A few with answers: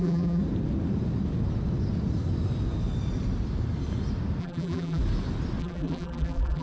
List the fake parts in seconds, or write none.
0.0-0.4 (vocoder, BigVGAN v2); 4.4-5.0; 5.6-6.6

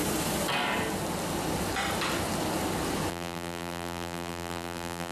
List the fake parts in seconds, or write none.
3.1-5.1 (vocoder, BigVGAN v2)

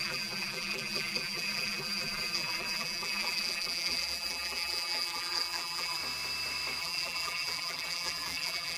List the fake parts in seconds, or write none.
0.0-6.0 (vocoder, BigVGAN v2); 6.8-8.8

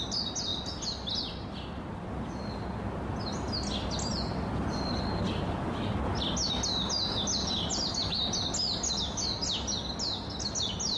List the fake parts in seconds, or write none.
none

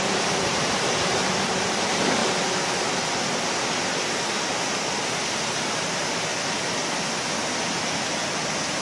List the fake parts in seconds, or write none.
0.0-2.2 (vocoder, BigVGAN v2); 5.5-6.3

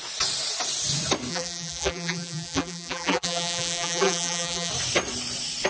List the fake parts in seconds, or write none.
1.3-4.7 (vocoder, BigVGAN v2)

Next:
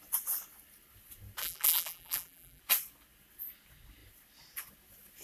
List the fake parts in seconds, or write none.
1.4-2.6 (vocoder, BigVGAN v2)

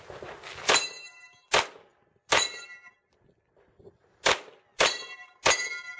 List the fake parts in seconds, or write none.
1.9-5.5 (vocoder, BigVGAN v2)